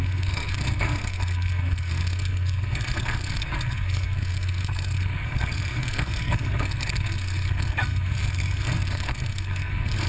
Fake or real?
fake